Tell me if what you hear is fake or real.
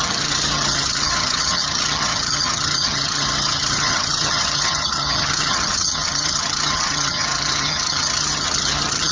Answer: fake